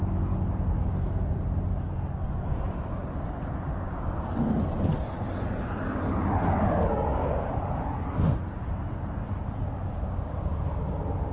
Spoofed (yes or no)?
no